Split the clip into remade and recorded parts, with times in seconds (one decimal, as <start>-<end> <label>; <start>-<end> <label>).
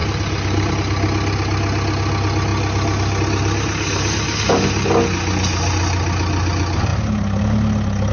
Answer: 0.0-8.1 recorded